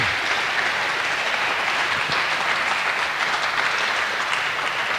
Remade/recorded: recorded